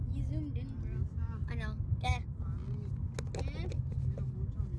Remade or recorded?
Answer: recorded